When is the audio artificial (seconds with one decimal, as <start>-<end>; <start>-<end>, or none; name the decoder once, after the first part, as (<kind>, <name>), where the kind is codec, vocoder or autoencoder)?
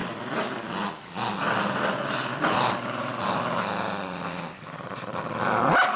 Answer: 0.0-0.5 (vocoder, BigVGAN v2); 2.3-6.0